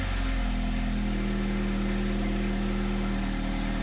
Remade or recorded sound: recorded